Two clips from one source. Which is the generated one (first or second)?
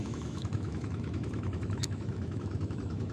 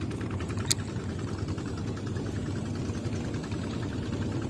first